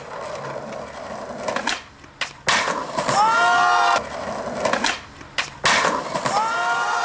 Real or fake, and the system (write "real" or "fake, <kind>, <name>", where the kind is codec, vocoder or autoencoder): real